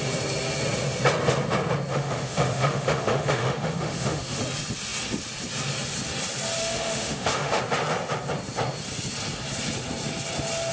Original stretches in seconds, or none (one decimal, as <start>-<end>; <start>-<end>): 0.0-1.9; 4.4-6.6; 7.6-10.7